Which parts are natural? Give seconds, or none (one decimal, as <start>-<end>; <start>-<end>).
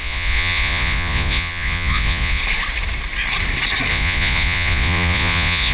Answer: 2.4-3.9